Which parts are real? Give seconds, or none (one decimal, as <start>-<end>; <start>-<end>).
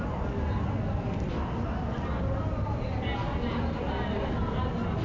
0.0-5.0